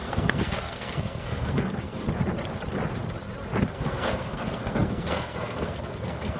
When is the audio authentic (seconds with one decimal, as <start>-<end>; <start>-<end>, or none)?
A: 2.0-3.7